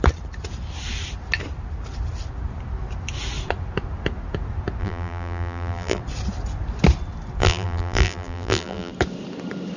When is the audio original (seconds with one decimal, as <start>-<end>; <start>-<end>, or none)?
0.0-4.8; 6.0-7.4; 8.9-9.8